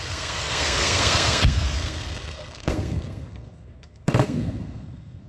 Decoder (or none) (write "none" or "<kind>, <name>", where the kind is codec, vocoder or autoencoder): codec, SNAC